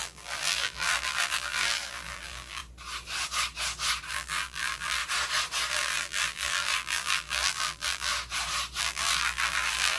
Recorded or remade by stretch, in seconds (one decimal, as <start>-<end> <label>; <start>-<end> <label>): 0.0-2.6 remade; 2.6-4.1 recorded; 4.1-5.0 remade; 5.0-5.7 recorded; 5.7-8.1 remade; 8.1-8.8 recorded; 8.8-10.0 remade